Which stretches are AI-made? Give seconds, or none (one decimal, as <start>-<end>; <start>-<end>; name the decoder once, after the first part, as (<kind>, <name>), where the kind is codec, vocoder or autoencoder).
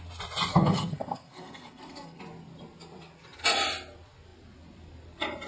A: 0.5-2.2 (codec, SNAC)